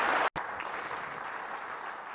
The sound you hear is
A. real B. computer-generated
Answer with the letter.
A